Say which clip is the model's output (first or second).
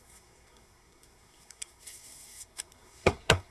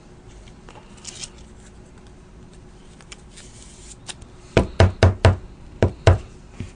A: first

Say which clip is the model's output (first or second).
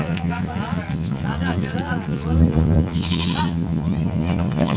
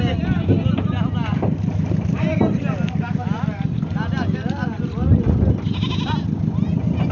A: first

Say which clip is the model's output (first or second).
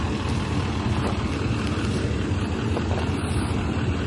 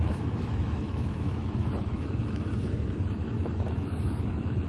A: second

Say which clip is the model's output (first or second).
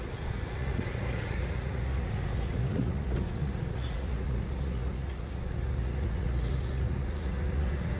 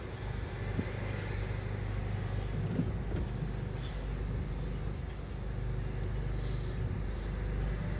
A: first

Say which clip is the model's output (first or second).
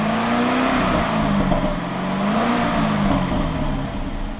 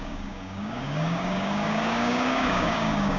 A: second